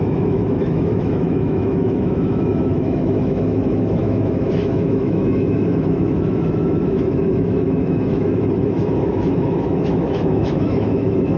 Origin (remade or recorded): remade